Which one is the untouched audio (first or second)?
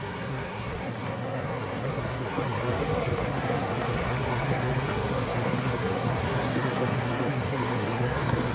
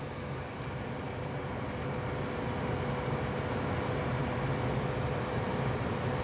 second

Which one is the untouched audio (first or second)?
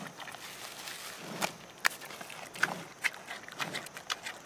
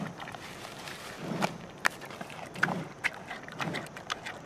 first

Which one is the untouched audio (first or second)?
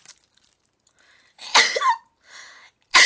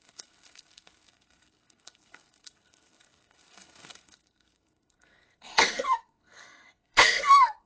first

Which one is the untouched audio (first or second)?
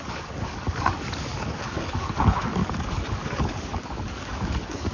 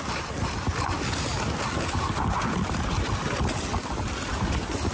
second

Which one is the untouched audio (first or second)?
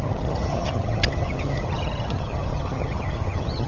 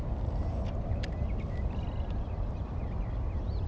second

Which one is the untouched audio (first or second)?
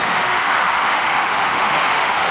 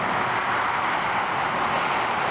second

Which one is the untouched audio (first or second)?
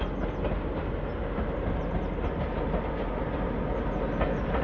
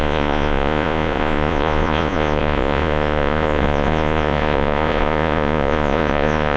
first